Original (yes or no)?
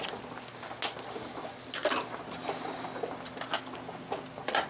yes